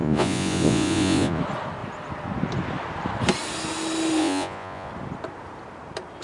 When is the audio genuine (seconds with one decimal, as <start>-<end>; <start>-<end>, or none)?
1.4-4.2; 4.9-6.2